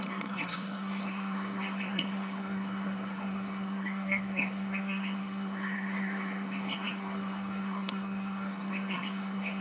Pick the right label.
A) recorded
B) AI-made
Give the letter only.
B